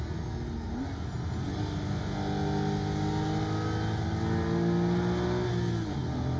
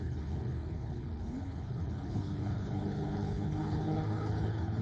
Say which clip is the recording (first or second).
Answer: first